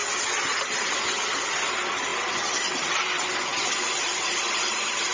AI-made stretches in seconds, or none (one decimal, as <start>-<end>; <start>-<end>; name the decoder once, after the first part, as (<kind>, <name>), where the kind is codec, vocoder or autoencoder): none